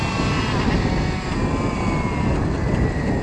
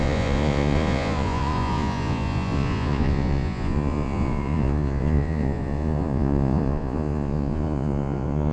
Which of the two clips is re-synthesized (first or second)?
second